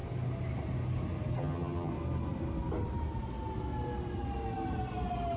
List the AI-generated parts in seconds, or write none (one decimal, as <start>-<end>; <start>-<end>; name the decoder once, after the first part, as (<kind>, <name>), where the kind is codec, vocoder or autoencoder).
1.4-1.9 (vocoder, HiFi-GAN)